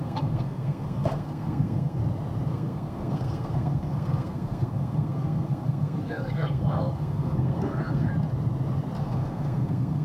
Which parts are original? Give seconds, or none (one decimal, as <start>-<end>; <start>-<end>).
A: 2.0-2.5; 8.1-9.0